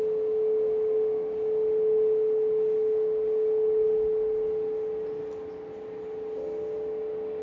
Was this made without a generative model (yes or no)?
yes